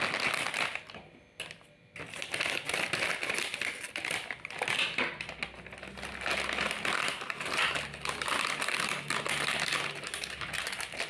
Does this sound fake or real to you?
real